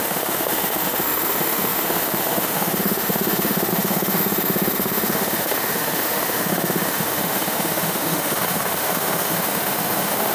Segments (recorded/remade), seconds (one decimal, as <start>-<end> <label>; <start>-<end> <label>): 0.0-10.3 remade

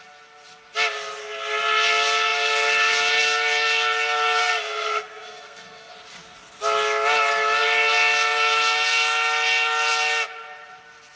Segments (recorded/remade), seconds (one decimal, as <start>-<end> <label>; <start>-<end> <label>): 0.0-4.4 recorded; 4.4-5.9 remade; 5.9-11.2 recorded

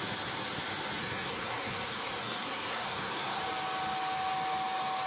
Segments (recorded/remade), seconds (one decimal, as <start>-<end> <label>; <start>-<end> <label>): 0.0-1.0 recorded; 1.0-3.4 remade; 3.4-5.1 recorded

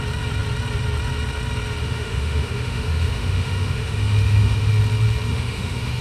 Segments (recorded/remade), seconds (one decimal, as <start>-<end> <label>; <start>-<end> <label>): 0.0-1.8 recorded; 1.8-4.7 remade; 4.7-5.3 recorded; 5.3-6.0 remade

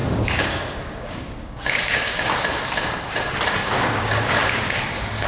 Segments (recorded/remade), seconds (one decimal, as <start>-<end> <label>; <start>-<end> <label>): 0.0-2.3 remade; 2.3-3.6 recorded; 3.6-4.8 remade; 4.8-5.3 recorded

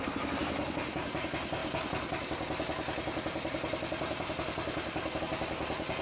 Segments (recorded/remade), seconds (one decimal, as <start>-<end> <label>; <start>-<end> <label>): 0.0-1.6 recorded; 1.6-5.2 remade; 5.2-6.0 recorded

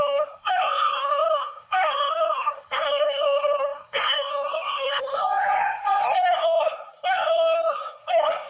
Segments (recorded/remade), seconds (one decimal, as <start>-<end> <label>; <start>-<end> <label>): 0.0-8.5 remade